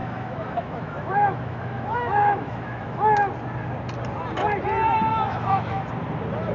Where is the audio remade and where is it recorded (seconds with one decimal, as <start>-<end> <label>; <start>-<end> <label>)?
0.0-3.3 remade; 3.3-5.1 recorded; 5.1-5.9 remade; 5.9-6.5 recorded

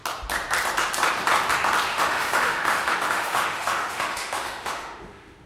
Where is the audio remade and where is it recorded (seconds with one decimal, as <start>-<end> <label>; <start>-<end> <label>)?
0.0-1.9 recorded; 1.9-5.5 remade

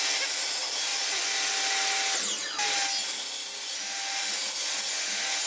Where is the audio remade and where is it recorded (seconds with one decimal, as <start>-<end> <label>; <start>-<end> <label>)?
0.0-5.5 recorded

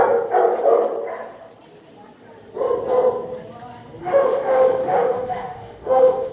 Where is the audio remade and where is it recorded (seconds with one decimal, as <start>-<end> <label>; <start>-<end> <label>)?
0.0-4.0 recorded; 4.0-6.3 remade

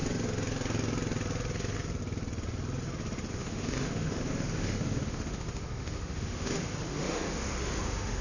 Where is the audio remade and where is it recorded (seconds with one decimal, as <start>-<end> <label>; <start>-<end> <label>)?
0.0-3.3 recorded; 3.3-8.2 remade